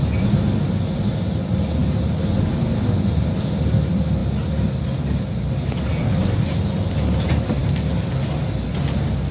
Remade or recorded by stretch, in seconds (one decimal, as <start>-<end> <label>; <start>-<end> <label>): 0.0-9.3 recorded